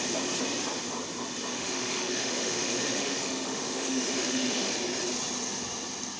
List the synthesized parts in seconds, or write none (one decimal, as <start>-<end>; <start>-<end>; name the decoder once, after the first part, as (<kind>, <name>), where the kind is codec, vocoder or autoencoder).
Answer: 1.5-4.7 (autoencoder, DAC-VAE)